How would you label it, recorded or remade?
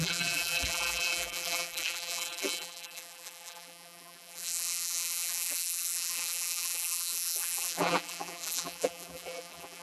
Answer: remade